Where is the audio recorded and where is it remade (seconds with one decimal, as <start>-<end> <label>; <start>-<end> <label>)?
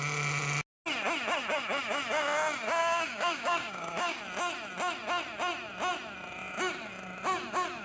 0.0-2.8 recorded; 2.8-4.2 remade; 4.2-7.8 recorded